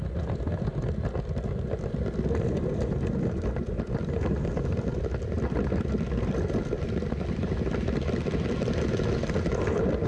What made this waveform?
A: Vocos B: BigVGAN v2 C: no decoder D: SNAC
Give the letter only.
C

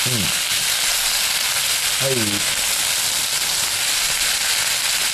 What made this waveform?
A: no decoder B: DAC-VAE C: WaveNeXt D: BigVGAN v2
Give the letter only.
A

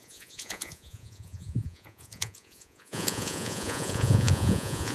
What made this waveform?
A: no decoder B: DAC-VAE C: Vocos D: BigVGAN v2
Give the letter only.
C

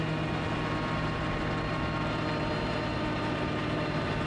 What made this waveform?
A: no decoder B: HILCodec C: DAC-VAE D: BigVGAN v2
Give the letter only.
A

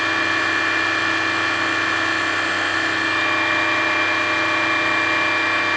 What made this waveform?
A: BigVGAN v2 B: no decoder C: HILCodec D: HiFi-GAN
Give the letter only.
B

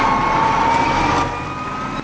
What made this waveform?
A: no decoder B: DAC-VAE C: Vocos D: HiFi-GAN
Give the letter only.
A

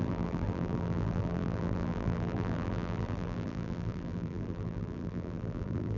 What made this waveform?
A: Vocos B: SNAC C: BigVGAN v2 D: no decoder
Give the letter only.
C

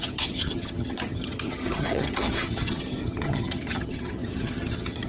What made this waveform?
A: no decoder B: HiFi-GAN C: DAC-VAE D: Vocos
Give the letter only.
B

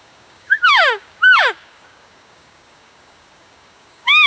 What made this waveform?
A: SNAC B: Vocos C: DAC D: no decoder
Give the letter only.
C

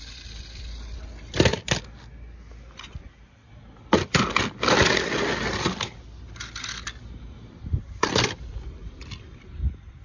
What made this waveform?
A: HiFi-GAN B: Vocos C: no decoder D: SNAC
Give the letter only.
C